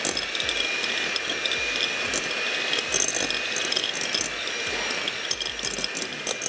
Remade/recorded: recorded